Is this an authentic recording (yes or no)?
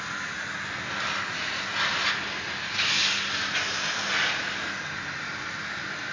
yes